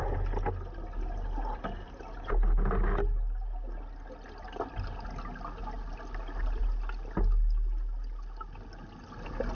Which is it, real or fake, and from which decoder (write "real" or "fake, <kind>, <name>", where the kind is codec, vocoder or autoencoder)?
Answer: real